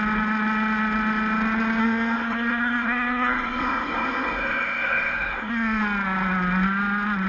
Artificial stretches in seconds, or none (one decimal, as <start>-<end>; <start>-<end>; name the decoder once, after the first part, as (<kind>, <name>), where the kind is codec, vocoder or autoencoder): 1.8-5.8 (codec, SNAC)